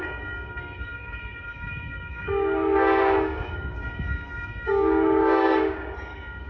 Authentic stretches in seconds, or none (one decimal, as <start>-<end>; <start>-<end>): none